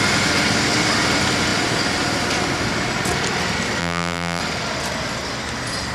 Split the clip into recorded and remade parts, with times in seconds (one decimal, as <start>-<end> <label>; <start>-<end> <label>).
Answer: 0.0-3.8 recorded; 3.8-4.4 remade; 4.4-5.9 recorded